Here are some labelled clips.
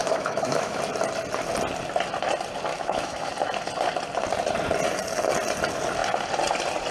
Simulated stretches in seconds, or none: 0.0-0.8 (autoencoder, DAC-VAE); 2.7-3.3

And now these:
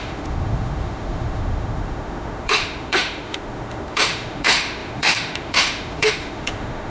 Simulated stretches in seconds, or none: 0.0-6.9 (autoencoder, DAC-VAE)

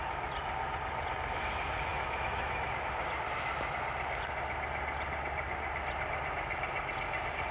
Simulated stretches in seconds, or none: 1.9-2.7 (autoencoder, DAC-VAE)

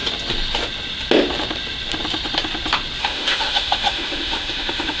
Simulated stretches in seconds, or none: 3.0-5.0 (autoencoder, DAC-VAE)

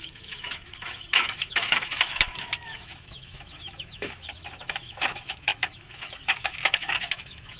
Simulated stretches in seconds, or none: 0.0-7.6 (autoencoder, DAC-VAE)

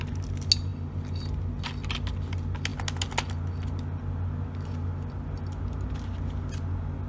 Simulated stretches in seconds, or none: none

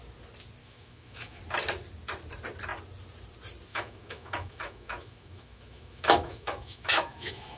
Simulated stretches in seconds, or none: 0.6-1.4 (autoencoder, DAC-VAE); 3.7-7.6